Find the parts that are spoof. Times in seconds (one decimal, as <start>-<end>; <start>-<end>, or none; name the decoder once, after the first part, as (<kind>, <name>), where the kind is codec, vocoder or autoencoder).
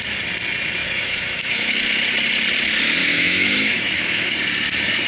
0.8-1.8 (autoencoder, DAC-VAE); 3.0-4.3